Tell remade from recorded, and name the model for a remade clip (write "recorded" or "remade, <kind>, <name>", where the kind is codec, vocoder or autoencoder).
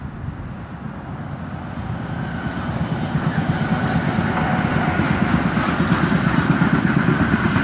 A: recorded